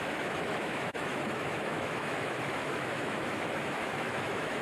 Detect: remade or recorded remade